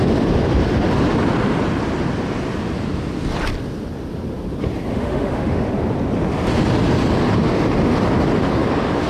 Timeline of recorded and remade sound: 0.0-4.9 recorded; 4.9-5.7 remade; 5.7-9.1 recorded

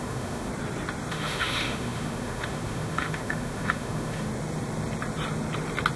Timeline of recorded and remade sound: 0.0-0.5 remade; 0.5-1.1 recorded; 1.1-4.3 remade; 4.3-6.0 recorded

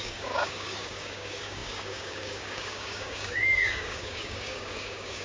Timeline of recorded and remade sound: 0.0-5.2 remade

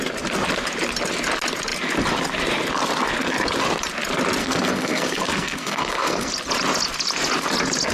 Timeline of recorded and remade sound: 0.0-4.4 recorded; 4.4-6.3 remade; 6.3-7.9 recorded

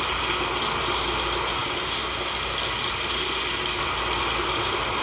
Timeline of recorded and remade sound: 0.0-5.0 recorded

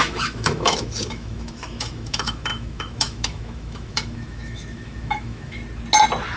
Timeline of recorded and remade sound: 0.0-5.6 remade; 5.6-6.4 recorded

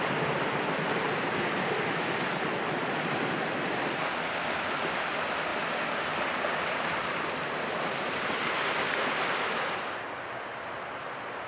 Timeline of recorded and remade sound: 0.0-11.5 recorded